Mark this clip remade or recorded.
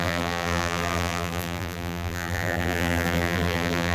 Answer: remade